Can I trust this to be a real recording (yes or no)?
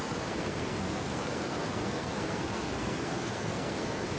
no